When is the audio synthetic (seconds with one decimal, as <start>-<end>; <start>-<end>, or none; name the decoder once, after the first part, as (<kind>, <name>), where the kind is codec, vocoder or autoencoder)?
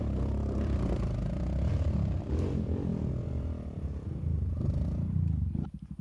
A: 0.0-2.9 (vocoder, BigVGAN v2)